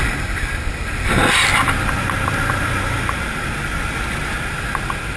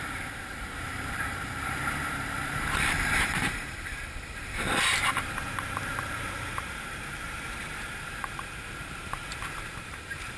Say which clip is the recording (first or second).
first